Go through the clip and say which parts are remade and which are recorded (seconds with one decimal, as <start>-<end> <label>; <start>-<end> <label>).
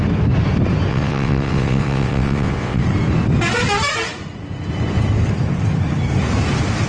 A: 0.0-0.9 recorded; 0.9-2.8 remade; 2.8-6.9 recorded